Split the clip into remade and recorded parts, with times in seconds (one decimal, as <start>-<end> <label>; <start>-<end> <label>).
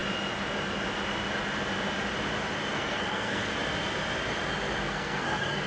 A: 0.0-2.7 recorded; 2.7-3.5 remade; 3.5-4.8 recorded; 4.8-5.7 remade